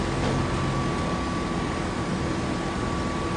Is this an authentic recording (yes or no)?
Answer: yes